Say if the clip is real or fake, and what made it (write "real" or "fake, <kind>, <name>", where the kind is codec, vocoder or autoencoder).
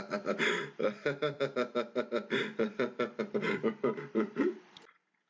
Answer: fake, vocoder, BigVGAN v2